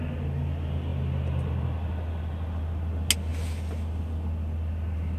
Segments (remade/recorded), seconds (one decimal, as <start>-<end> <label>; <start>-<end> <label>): 0.0-5.2 recorded